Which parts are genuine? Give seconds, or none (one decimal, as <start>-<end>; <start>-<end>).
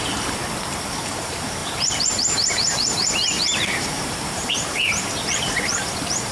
0.4-1.0